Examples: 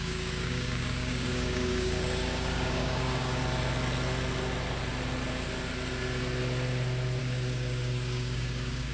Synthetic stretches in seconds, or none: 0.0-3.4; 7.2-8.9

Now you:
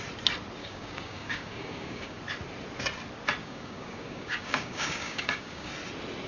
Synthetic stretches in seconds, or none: 0.6-2.2; 3.4-5.7

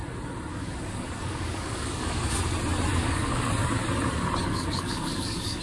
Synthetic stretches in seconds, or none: 0.5-2.4; 3.0-3.5; 4.4-5.6

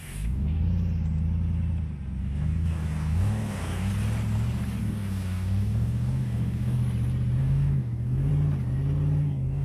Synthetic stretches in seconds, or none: 0.0-0.6; 2.2-3.9; 4.8-6.8; 7.4-8.3; 9.2-9.6

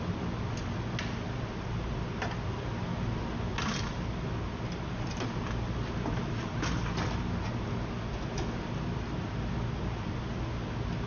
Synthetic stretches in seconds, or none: none

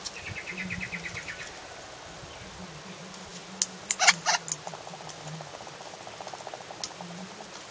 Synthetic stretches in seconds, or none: none

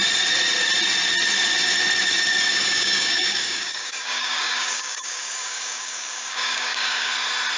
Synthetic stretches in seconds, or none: 2.5-7.1